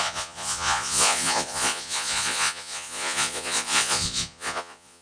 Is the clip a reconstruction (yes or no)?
yes